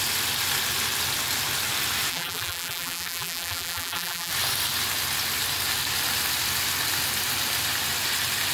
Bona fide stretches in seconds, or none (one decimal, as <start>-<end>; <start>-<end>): 0.0-2.1; 4.3-8.5